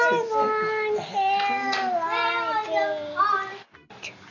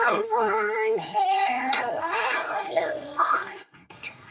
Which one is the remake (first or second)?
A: second